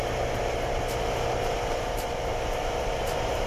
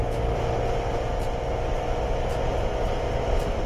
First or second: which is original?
second